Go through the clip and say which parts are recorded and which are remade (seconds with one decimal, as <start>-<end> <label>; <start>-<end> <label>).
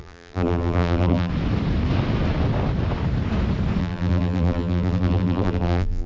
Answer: 0.0-1.3 remade; 1.3-3.8 recorded; 3.8-6.1 remade